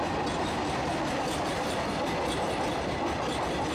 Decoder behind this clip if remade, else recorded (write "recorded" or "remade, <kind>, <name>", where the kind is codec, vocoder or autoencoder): recorded